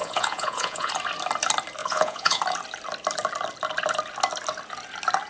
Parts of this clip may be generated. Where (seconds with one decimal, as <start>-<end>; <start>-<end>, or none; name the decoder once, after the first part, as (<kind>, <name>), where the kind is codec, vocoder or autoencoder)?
0.0-0.9 (vocoder, Vocos); 1.8-2.4